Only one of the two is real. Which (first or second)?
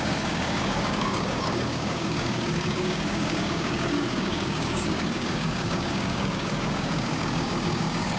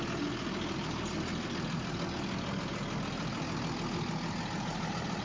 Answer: second